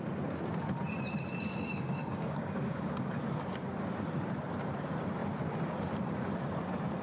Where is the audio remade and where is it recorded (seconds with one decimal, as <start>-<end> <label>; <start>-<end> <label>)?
0.0-1.4 recorded; 1.4-3.2 remade; 3.2-7.0 recorded